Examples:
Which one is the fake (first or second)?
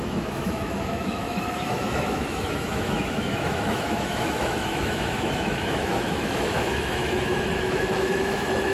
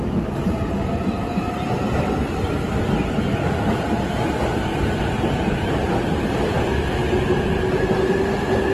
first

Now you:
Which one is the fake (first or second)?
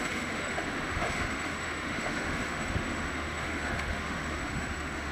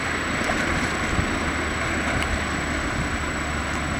first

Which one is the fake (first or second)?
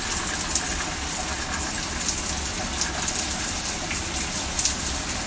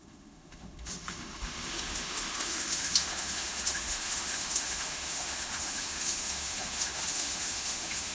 second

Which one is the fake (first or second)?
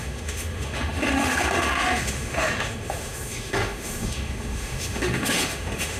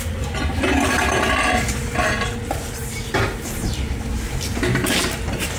first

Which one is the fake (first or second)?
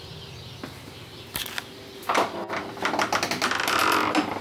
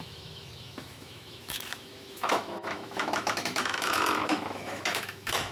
second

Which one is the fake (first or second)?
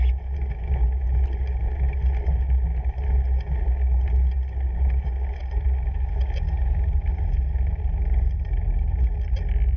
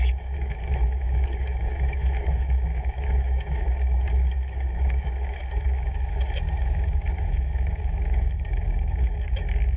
second